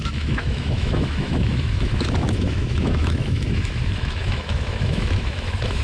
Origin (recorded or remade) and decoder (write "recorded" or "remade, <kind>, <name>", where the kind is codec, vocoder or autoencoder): remade, autoencoder, DAC-VAE